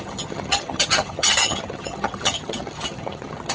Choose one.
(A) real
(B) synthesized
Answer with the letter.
B